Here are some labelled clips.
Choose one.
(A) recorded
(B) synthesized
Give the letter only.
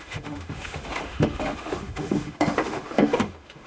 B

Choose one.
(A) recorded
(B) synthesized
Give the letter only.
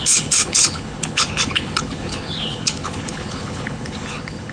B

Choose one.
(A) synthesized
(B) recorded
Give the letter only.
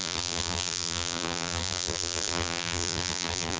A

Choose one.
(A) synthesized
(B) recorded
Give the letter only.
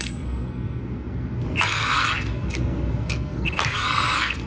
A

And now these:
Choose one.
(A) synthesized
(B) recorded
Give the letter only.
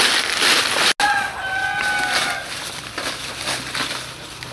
B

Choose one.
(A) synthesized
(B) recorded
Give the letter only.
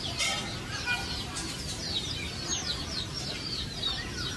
A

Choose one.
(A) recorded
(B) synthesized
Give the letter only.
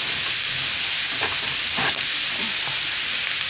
A